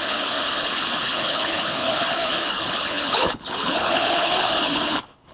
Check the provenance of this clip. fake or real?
fake